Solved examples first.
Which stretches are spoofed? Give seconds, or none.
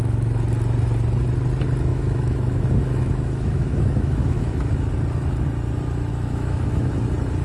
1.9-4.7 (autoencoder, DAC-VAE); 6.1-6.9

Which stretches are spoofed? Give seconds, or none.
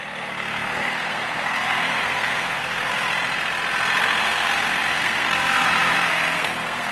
0.0-2.9 (codec, SNAC); 4.2-6.9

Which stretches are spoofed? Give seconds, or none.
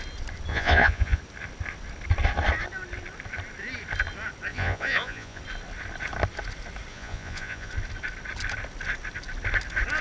0.5-1.2 (vocoder, Vocos); 4.5-5.4; 6.9-7.7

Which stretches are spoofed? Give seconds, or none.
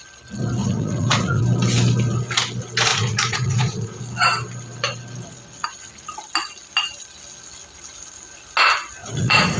0.6-1.4 (vocoder, Vocos); 2.9-4.0; 9.0-9.6